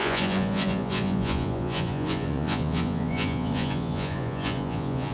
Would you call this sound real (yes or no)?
no